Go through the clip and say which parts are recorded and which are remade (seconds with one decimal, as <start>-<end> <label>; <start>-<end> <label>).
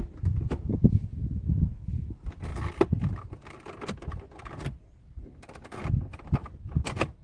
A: 0.0-7.2 recorded